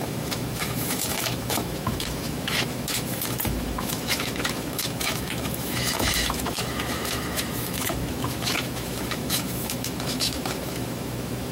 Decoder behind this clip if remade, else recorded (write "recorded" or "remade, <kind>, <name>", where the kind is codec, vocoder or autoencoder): remade, autoencoder, DAC-VAE